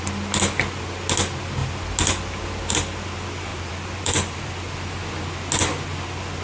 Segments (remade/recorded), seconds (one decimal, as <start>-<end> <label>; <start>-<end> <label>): 0.0-3.5 recorded; 3.5-4.5 remade; 4.5-6.4 recorded